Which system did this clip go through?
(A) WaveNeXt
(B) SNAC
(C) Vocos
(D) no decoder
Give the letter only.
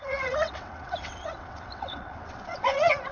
A